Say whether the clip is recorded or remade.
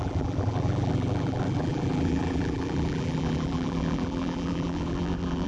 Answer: remade